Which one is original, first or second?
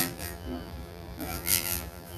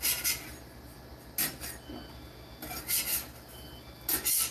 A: second